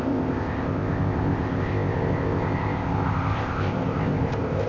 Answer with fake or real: fake